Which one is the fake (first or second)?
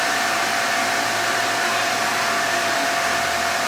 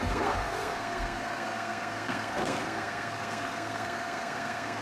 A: second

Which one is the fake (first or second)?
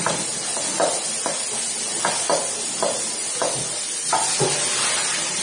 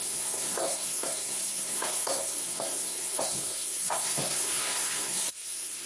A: second